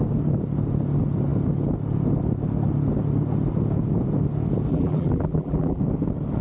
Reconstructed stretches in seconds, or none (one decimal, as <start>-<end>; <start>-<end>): 4.7-5.8